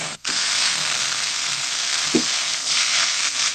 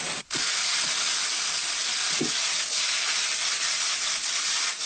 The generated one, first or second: first